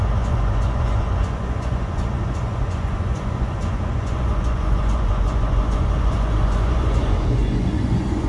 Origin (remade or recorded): remade